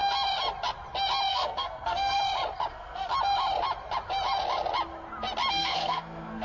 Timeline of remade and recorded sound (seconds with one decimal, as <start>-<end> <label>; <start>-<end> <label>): 0.0-1.3 recorded; 1.3-2.2 remade; 2.2-2.7 recorded; 2.7-3.1 remade; 3.1-5.5 recorded; 5.5-6.4 remade